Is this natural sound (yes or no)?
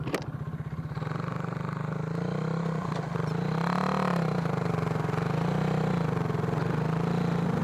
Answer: yes